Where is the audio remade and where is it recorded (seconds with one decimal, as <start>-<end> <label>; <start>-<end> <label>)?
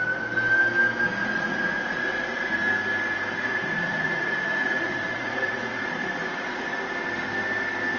0.0-1.2 recorded; 1.2-2.5 remade; 2.5-3.4 recorded; 3.4-6.6 remade; 6.6-8.0 recorded